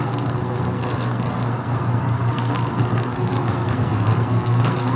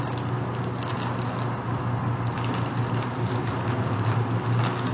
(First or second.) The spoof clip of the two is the first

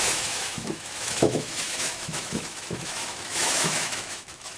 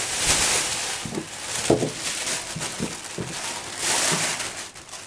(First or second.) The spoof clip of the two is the first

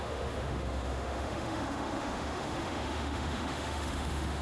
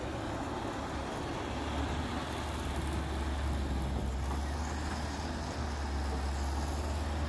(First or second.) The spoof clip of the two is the first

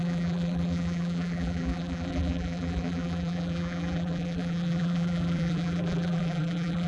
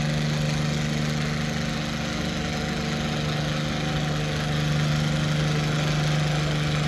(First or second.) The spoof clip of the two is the first